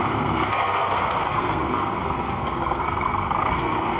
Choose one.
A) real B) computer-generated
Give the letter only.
B